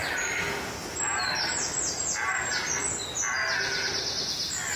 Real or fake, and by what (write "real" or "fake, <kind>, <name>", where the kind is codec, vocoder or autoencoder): real